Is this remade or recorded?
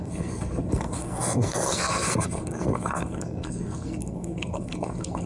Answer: remade